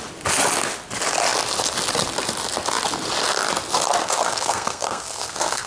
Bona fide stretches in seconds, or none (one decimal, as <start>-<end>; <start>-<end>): 0.0-4.0